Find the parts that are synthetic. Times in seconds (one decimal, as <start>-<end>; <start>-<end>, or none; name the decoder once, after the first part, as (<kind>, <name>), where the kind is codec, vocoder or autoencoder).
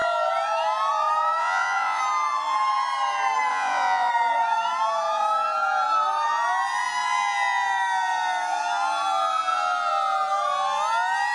1.4-2.0 (vocoder, Vocos); 3.5-4.1